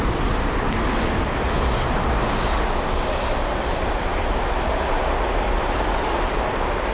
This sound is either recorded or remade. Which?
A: recorded